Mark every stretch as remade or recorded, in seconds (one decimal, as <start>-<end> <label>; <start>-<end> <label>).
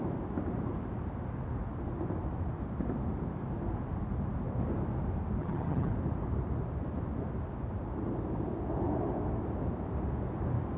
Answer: 0.0-5.4 recorded; 5.4-5.9 remade; 5.9-10.8 recorded